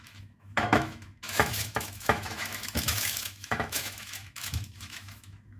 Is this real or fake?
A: fake